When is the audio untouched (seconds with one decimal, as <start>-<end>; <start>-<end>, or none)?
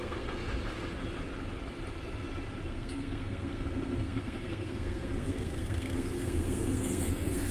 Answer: 0.4-2.6